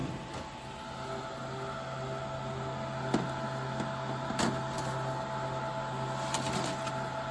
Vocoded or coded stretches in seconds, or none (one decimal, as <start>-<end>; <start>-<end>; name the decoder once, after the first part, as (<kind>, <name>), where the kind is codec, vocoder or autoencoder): none